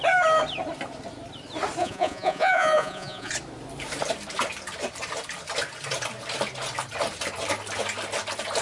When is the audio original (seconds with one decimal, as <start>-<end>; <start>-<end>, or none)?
0.0-1.8; 3.3-8.6